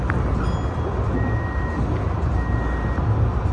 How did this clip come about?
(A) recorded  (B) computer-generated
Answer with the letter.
A